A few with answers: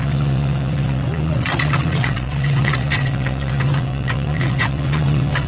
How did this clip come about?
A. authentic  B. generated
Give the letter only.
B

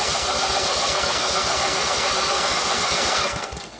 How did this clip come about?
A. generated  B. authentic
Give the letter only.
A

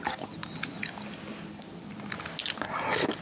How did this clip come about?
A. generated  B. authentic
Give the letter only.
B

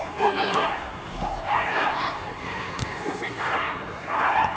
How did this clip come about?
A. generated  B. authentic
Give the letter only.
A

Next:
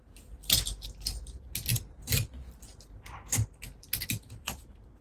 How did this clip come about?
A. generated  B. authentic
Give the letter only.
B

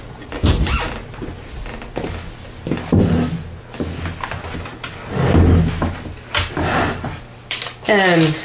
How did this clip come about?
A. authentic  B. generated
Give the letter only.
A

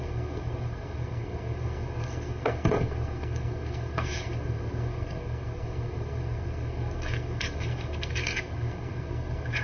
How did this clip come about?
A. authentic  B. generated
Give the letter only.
B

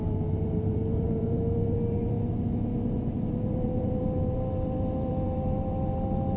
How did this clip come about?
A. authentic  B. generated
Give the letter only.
B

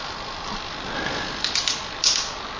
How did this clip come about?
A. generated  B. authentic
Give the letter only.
B